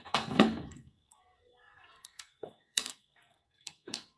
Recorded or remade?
remade